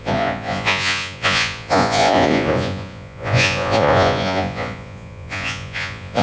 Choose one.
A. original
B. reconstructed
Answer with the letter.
B